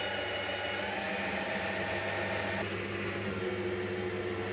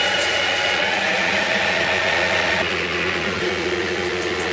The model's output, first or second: second